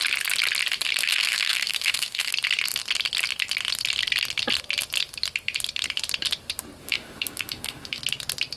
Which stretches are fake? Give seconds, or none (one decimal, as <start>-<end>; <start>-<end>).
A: 1.0-2.3; 6.8-8.0